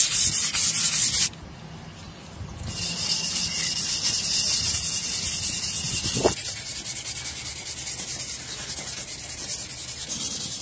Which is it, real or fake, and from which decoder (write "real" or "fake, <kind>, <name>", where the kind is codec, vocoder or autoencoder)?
real